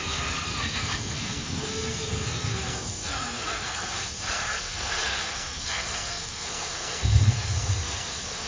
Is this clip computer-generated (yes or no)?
yes